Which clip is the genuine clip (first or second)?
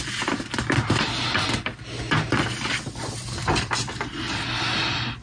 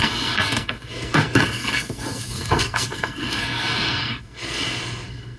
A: first